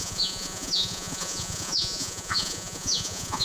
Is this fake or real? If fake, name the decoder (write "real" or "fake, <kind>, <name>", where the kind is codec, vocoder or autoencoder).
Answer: fake, vocoder, Vocos